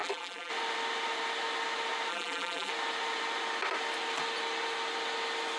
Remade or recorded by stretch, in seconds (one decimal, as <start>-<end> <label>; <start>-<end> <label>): 0.0-0.5 remade; 0.5-2.1 recorded; 2.1-2.7 remade; 2.7-5.6 recorded